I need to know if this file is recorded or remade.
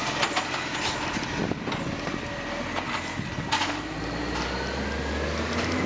recorded